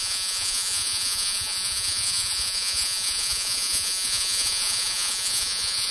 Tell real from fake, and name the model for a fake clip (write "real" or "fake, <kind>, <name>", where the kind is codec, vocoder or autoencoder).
fake, vocoder, Vocos